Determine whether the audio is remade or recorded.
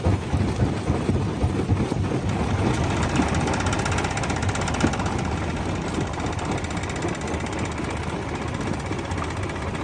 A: recorded